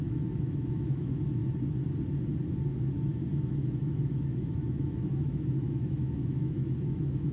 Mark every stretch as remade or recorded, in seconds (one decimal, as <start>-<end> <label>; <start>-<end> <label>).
0.0-1.4 remade; 1.4-2.9 recorded; 2.9-7.3 remade